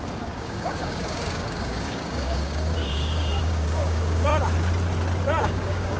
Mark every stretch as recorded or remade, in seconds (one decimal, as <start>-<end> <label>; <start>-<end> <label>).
0.0-4.3 remade; 4.3-5.4 recorded; 5.4-6.0 remade